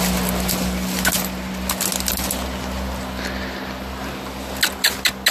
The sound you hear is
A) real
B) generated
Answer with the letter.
A